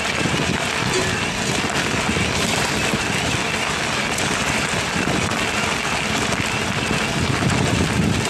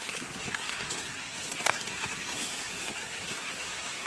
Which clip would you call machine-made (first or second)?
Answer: second